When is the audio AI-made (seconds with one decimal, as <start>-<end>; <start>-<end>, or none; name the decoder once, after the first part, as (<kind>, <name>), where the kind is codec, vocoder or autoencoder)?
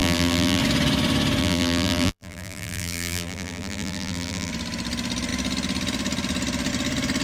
0.0-0.6 (vocoder, BigVGAN v2); 1.4-4.5